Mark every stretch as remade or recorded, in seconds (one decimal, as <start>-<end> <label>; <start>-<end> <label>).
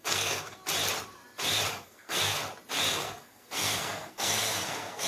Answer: 0.0-0.6 remade; 0.6-1.7 recorded; 1.7-2.4 remade; 2.4-2.9 recorded; 2.9-5.1 remade